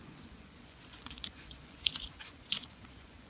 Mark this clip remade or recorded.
remade